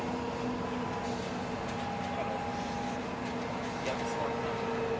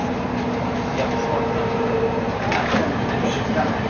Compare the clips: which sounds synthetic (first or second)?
second